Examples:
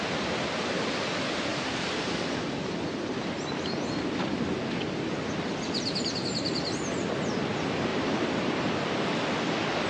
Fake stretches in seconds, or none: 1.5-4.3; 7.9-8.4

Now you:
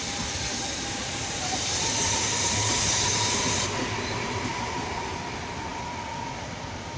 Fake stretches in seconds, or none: 1.0-5.2

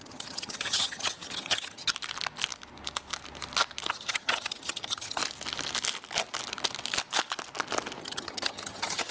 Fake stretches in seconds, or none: 0.0-1.9; 3.9-5.2; 8.0-9.1

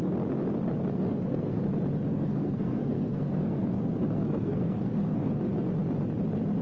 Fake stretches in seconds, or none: 0.9-1.7; 2.1-5.4

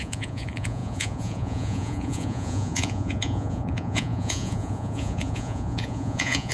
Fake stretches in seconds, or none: 0.0-6.5

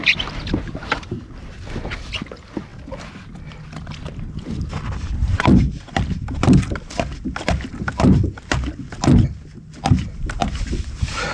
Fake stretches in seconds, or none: none